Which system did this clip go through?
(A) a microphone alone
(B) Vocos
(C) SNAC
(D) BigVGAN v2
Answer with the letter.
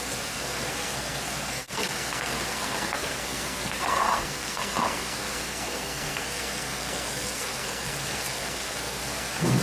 C